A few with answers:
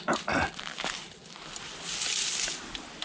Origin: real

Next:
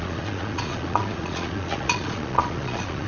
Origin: fake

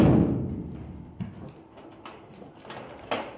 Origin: real